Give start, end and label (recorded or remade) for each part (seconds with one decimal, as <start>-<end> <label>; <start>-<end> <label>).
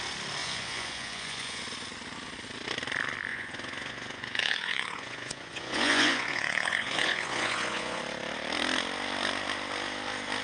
0.0-0.4 recorded; 0.4-1.6 remade; 1.6-3.3 recorded; 3.3-8.0 remade; 8.0-10.4 recorded